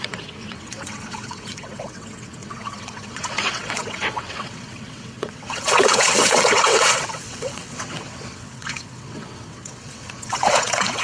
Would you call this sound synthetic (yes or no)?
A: yes